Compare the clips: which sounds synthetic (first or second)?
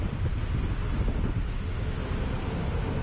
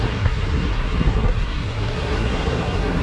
second